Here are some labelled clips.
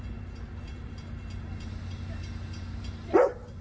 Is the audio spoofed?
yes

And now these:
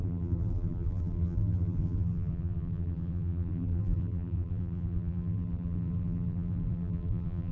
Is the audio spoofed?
yes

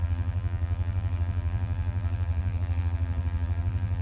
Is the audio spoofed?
yes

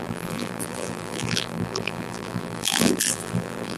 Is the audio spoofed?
yes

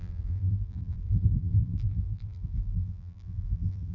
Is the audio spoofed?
yes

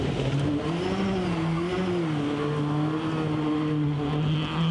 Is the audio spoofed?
no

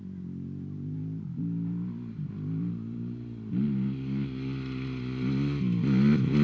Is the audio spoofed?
yes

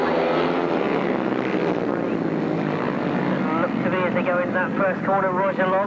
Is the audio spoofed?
no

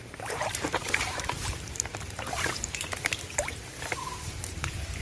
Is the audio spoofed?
yes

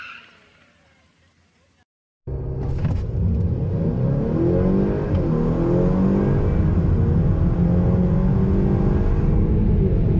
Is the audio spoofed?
no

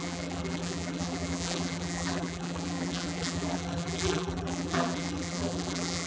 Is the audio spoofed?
yes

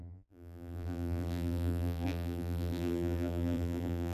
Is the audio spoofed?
yes